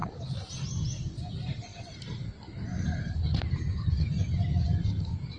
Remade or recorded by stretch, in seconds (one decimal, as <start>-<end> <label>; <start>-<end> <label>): 0.0-5.4 recorded

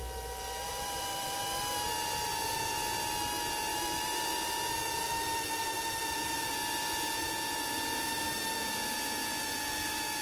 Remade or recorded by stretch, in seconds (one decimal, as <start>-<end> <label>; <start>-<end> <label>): 0.0-0.7 recorded; 0.7-1.4 remade; 1.4-3.7 recorded; 3.7-6.5 remade; 6.5-10.2 recorded

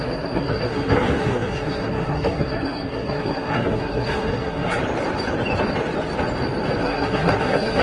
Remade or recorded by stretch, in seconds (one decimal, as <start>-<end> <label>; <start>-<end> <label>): 0.0-4.8 remade; 4.8-6.8 recorded; 6.8-7.8 remade